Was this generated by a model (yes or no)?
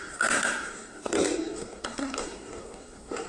yes